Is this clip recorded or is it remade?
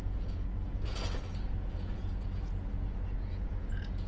remade